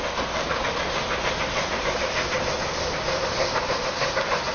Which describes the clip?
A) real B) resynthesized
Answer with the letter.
A